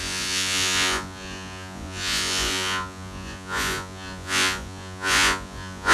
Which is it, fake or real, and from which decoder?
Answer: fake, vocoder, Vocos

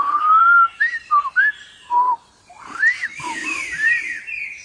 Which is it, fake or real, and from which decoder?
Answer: fake, vocoder, BigVGAN v2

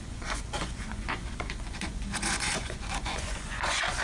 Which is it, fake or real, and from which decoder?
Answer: fake, vocoder, Vocos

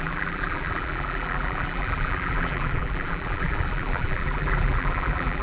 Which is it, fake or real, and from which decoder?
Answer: fake, vocoder, BigVGAN v2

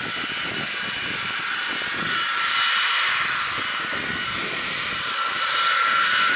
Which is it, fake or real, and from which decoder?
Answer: real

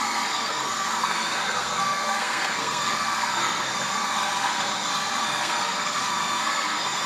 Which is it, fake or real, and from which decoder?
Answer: fake, codec, SNAC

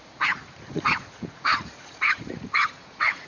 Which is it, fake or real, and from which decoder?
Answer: fake, vocoder, Vocos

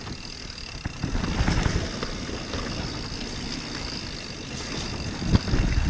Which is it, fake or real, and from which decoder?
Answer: real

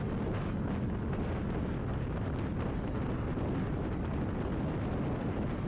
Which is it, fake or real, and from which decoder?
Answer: real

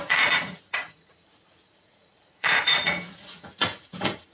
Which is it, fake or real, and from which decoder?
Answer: fake, vocoder, Vocos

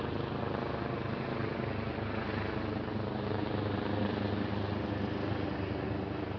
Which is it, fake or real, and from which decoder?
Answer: real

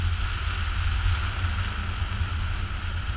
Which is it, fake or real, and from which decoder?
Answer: real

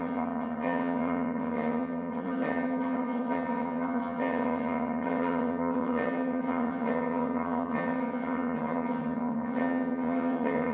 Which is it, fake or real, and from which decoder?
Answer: fake, vocoder, HiFi-GAN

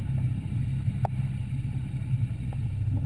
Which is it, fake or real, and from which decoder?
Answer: real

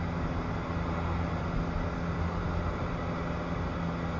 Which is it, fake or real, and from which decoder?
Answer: real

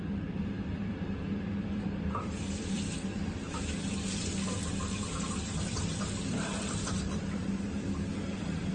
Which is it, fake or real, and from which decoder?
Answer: fake, vocoder, BigVGAN v2